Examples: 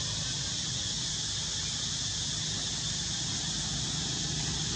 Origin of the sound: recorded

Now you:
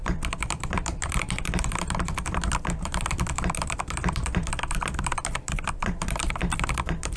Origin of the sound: remade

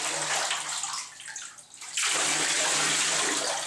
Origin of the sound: recorded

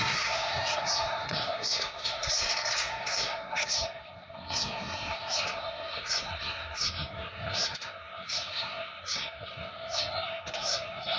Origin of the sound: remade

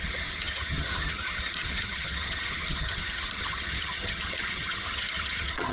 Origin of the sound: remade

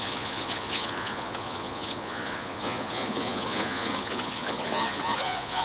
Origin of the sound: remade